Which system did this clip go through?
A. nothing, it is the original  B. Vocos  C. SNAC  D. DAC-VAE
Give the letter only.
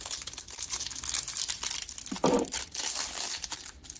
A